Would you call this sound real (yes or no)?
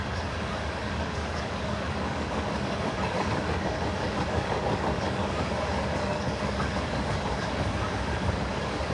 no